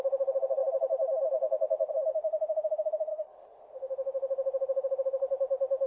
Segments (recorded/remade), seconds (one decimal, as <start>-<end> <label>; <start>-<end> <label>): 0.0-3.1 recorded; 3.1-3.6 remade; 3.6-5.9 recorded